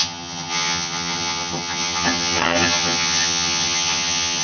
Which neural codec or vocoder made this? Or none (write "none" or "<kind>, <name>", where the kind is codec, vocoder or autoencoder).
vocoder, HiFi-GAN